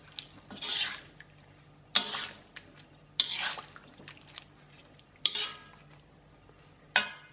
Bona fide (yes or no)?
yes